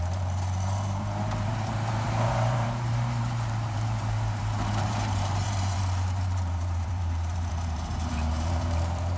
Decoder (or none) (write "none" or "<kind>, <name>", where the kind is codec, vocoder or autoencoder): vocoder, BigVGAN v2